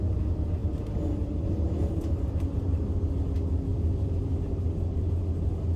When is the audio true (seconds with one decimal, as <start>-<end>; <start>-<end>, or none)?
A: 0.0-3.7; 4.2-5.8